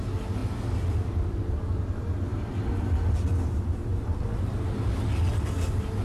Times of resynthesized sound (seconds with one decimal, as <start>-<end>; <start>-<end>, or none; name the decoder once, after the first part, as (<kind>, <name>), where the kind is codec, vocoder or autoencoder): none

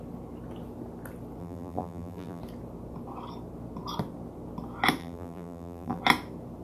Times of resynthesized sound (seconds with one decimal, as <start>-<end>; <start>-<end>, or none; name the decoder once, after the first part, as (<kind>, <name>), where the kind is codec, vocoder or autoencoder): 1.4-2.4 (vocoder, BigVGAN v2); 5.0-6.0

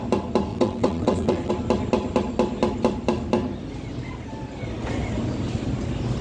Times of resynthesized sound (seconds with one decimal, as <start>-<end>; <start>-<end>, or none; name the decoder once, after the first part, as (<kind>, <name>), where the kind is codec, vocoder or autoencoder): 0.5-1.5 (vocoder, WaveNeXt)

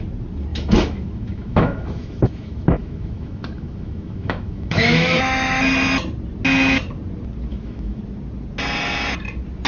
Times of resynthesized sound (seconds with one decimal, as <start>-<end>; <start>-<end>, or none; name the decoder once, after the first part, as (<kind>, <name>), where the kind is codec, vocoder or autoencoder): 0.5-5.6 (autoencoder, DAC-VAE); 7.5-8.0

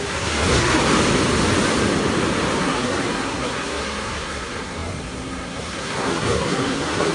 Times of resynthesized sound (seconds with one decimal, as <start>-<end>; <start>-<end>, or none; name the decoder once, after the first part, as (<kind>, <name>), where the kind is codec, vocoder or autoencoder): 0.0-0.8 (codec, SNAC); 2.6-7.1

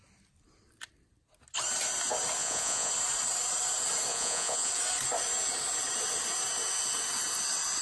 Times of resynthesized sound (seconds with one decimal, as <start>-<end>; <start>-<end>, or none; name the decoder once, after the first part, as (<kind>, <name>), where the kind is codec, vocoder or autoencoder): 2.4-2.9 (vocoder, Vocos); 4.1-4.7